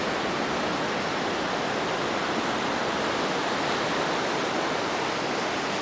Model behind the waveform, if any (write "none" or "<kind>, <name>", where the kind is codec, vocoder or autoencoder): none